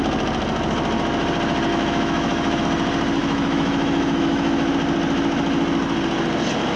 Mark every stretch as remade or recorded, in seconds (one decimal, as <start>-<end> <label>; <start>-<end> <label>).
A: 0.0-1.7 recorded; 1.7-2.6 remade; 2.6-3.2 recorded; 3.2-4.7 remade; 4.7-6.8 recorded